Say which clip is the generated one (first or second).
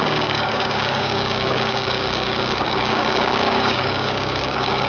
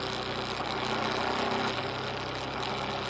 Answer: first